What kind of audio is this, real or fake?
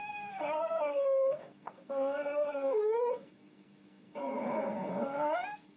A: fake